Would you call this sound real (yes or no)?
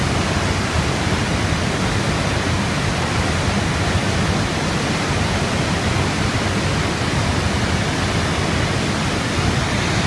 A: yes